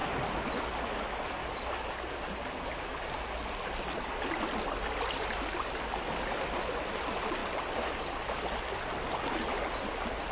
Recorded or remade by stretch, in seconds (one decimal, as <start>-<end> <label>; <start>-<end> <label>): 0.0-10.3 recorded